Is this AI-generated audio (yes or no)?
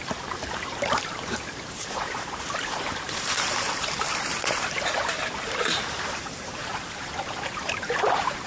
yes